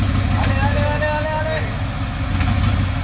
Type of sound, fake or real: real